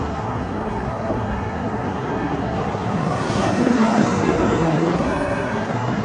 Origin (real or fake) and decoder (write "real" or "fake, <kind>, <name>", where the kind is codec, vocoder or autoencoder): fake, codec, SNAC